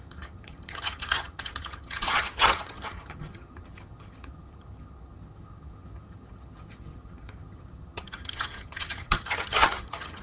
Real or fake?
fake